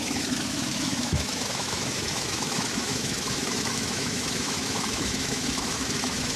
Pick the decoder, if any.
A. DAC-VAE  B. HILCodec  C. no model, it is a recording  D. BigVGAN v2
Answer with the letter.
A